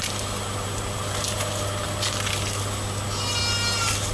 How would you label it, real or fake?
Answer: real